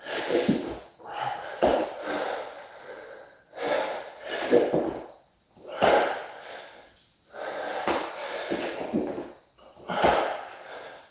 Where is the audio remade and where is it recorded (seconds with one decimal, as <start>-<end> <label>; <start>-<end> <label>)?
0.0-11.1 recorded